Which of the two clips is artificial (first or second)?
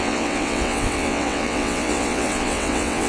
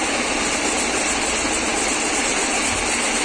first